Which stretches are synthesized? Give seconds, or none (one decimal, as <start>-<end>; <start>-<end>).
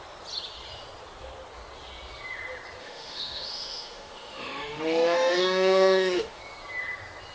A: 2.8-6.4